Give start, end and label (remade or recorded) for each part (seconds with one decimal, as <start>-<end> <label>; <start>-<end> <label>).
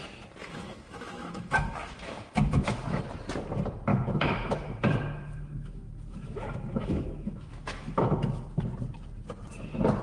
0.0-0.4 recorded; 0.4-3.0 remade; 3.0-3.9 recorded; 3.9-8.6 remade; 8.6-10.0 recorded